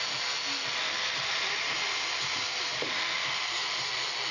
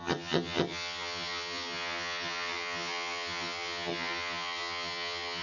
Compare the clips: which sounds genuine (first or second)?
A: first